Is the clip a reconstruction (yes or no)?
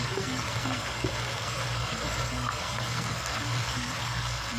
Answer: yes